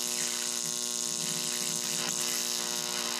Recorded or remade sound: recorded